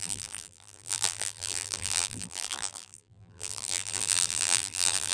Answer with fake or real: fake